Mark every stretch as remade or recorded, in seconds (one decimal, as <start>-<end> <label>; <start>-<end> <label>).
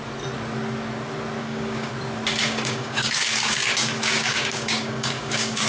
0.0-1.4 recorded; 1.4-1.9 remade; 1.9-2.4 recorded; 2.4-5.7 remade